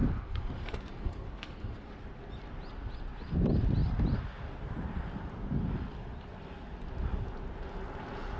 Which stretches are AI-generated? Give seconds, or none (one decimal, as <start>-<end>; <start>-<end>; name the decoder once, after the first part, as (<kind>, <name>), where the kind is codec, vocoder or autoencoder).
0.0-1.9 (codec, SNAC)